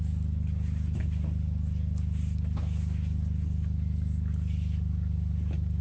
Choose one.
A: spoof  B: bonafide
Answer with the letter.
B